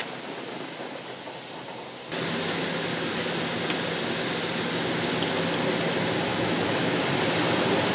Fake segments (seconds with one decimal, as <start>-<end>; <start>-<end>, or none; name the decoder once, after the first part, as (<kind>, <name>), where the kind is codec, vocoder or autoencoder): 6.3-7.0 (autoencoder, DAC-VAE)